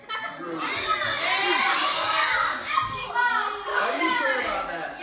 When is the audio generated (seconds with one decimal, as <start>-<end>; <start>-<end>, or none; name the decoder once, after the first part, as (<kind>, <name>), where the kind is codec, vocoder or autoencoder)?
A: 1.9-3.1 (codec, DAC); 3.7-4.2